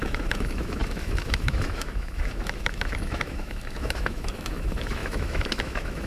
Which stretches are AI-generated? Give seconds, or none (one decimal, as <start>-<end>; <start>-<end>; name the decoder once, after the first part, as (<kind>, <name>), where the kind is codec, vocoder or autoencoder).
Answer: 0.0-6.1 (autoencoder, DAC-VAE)